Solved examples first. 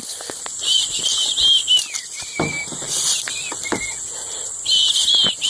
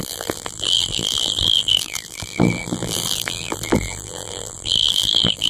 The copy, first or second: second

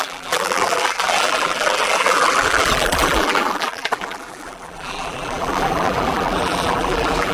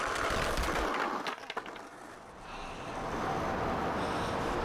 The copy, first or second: first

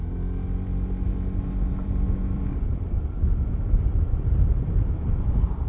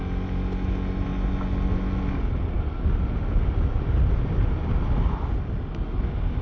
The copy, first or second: first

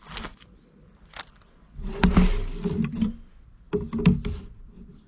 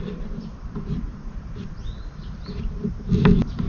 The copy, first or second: second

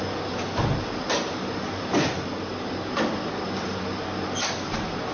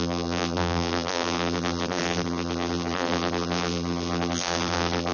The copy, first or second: second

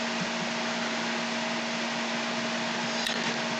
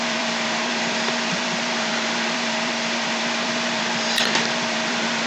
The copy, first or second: second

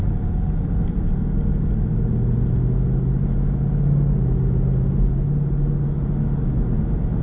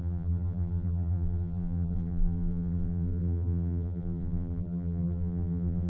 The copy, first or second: second